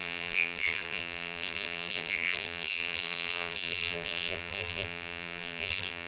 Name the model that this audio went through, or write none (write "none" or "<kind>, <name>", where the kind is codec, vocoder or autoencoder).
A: vocoder, BigVGAN v2